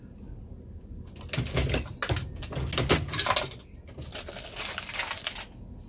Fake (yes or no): no